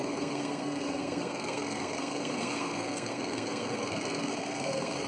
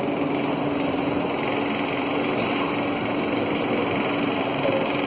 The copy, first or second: first